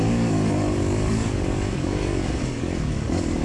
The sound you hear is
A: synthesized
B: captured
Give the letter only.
A